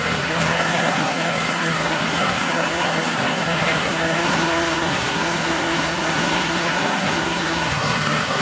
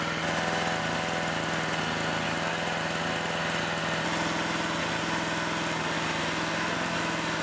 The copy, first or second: first